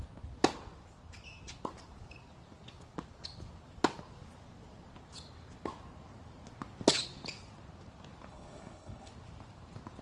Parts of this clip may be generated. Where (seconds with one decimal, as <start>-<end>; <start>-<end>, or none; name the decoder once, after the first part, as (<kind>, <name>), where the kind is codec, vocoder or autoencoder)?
8.3-9.1 (codec, HILCodec)